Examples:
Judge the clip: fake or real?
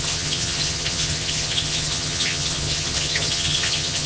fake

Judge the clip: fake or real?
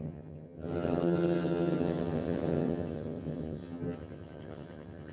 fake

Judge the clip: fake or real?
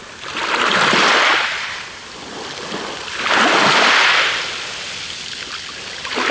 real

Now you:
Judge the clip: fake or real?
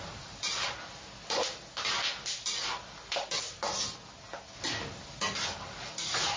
real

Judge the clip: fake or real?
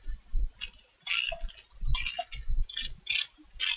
real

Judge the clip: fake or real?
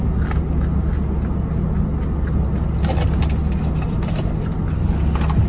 real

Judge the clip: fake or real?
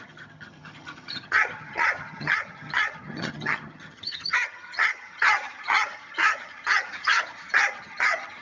fake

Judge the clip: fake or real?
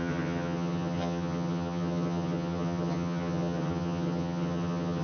fake